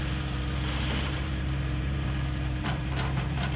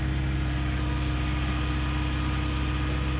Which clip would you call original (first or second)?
second